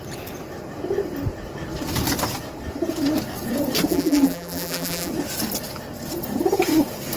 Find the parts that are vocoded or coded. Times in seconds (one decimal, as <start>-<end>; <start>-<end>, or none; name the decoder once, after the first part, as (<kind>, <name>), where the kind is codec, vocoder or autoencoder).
3.9-5.1 (vocoder, BigVGAN v2)